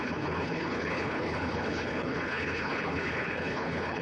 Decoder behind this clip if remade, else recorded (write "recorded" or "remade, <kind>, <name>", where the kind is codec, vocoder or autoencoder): remade, codec, HILCodec